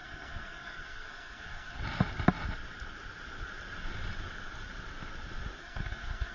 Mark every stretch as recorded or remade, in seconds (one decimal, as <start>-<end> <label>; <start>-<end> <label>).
0.0-1.8 remade; 1.8-5.6 recorded; 5.6-6.3 remade